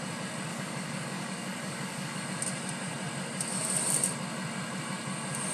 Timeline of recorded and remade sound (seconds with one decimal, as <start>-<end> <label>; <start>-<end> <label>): 0.0-0.5 recorded; 0.5-2.2 remade; 2.2-5.5 recorded